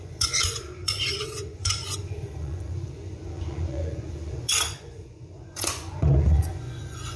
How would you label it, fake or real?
fake